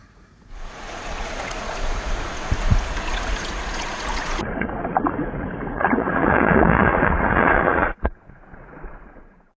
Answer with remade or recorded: remade